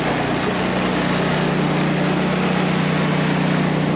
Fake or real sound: real